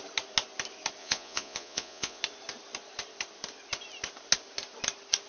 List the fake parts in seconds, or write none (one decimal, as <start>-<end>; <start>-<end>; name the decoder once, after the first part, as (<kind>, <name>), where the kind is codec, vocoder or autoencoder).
1.0-2.2 (vocoder, Vocos)